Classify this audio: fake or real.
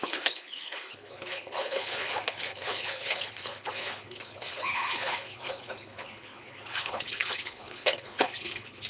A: fake